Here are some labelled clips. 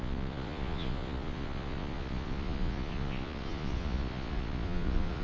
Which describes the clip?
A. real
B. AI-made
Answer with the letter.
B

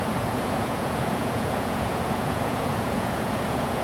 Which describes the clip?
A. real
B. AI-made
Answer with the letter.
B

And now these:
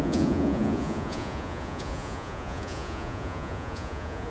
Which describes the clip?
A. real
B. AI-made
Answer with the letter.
B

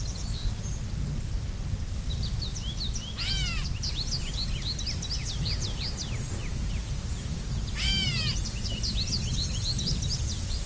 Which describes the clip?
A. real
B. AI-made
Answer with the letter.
A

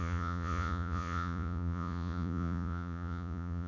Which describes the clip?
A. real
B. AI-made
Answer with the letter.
B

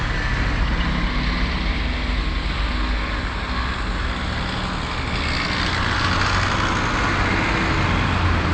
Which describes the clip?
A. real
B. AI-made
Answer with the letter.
A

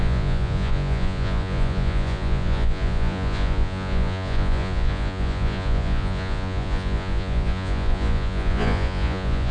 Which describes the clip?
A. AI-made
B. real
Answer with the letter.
A